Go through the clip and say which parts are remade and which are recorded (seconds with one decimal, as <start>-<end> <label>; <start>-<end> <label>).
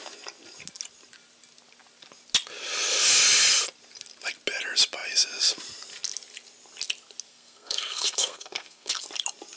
0.0-7.3 recorded; 7.3-9.0 remade; 9.0-9.6 recorded